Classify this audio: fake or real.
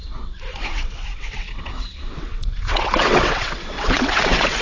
fake